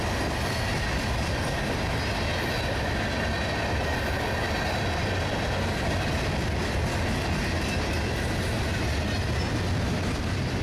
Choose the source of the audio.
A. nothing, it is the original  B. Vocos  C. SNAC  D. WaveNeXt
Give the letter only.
A